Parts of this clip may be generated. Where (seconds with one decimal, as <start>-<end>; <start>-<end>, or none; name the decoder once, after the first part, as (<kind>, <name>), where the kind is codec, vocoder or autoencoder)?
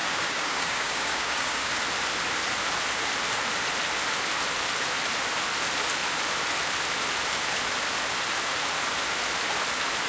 0.0-1.7 (codec, DAC)